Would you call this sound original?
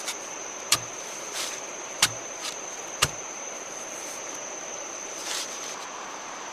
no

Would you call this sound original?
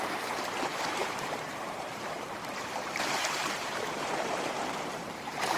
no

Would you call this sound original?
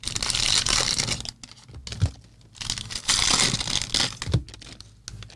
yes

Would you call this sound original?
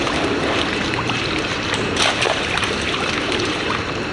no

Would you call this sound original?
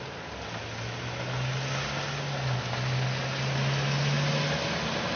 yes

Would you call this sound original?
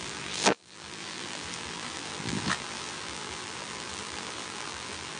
no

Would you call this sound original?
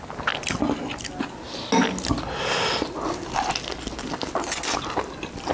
yes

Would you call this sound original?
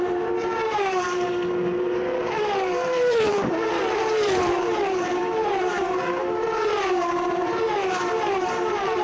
no